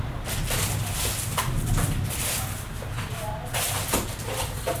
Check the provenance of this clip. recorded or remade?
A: recorded